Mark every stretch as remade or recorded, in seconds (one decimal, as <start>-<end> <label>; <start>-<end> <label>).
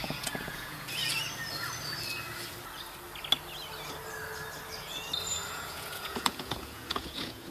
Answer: 0.0-1.0 remade; 1.0-5.5 recorded; 5.5-7.5 remade